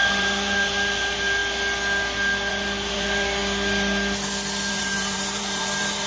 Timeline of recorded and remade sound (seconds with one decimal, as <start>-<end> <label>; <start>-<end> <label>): 0.0-1.4 remade; 1.4-2.5 recorded; 2.5-3.4 remade; 3.4-4.7 recorded; 4.7-6.1 remade